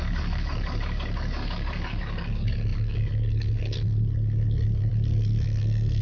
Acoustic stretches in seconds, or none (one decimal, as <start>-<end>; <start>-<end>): none